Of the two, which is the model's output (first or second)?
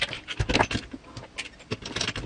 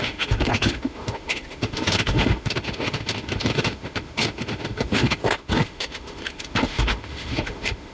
second